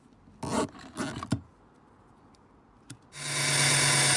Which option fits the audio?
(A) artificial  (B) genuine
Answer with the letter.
B